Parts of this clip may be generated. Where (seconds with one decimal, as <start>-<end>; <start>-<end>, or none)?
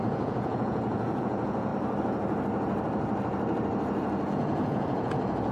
0.0-1.7; 4.3-5.5